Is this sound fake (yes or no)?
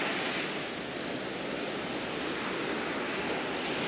no